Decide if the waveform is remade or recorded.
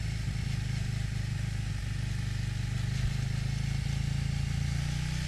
recorded